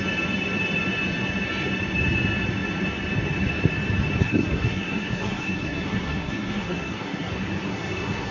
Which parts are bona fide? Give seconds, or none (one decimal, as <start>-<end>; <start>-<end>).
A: 0.0-4.2; 7.3-7.7